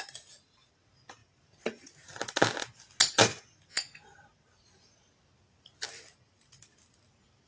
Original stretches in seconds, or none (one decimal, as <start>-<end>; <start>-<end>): 0.0-7.5